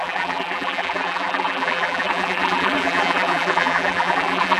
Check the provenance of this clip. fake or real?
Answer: fake